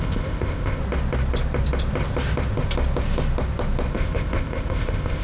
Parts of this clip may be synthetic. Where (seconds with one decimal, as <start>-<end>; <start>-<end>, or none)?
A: 0.0-0.8; 3.9-5.2